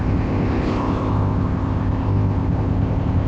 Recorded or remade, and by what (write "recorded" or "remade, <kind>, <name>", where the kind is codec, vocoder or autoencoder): remade, codec, ZipCodec